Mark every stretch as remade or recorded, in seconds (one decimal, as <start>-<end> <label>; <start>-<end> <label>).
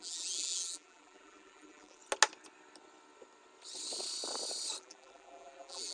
0.0-2.0 remade; 2.0-4.8 recorded; 4.8-5.9 remade